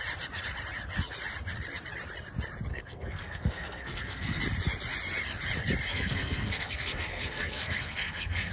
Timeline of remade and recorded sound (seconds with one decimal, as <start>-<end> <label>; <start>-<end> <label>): 0.0-2.7 recorded; 2.7-4.4 remade; 4.4-5.9 recorded; 5.9-8.5 remade

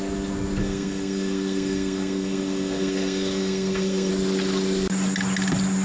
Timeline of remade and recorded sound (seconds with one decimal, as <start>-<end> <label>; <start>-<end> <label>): 0.0-0.6 recorded; 0.6-4.1 remade; 4.1-5.8 recorded

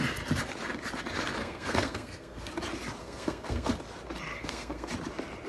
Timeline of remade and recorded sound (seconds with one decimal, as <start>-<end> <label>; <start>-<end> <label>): 0.0-1.4 recorded; 1.4-2.5 remade; 2.5-3.0 recorded; 3.0-3.7 remade; 3.7-4.3 recorded; 4.3-4.9 remade; 4.9-5.5 recorded

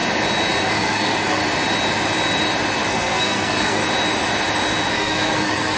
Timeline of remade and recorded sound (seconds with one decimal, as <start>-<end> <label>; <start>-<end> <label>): 0.0-0.6 recorded; 0.6-1.4 remade; 1.4-2.9 recorded; 2.9-3.8 remade; 3.8-4.9 recorded; 4.9-5.8 remade

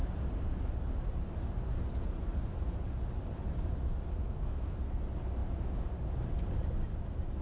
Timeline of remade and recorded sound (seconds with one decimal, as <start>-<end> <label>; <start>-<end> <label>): 0.0-4.1 recorded; 4.1-5.0 remade; 5.0-7.4 recorded